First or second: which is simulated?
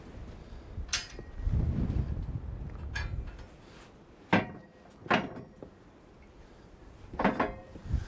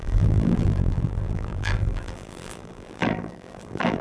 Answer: second